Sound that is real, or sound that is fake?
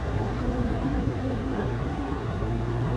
fake